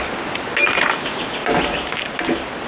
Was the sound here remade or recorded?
recorded